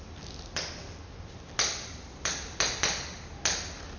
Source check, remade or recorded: recorded